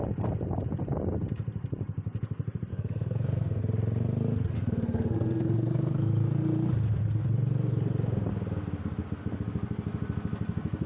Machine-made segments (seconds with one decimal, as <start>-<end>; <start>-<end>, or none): 2.7-3.6; 4.5-6.1